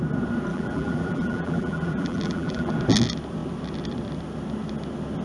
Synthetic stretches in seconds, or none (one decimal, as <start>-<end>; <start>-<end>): 0.5-2.7